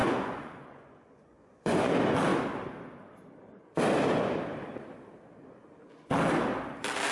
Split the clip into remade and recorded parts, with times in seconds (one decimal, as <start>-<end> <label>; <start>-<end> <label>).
0.0-1.9 remade; 1.9-7.1 recorded